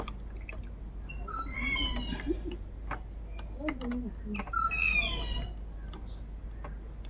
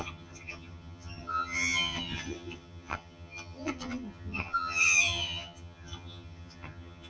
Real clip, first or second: first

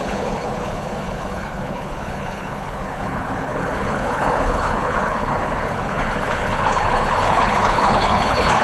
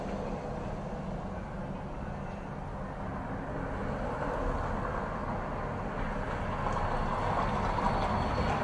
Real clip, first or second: second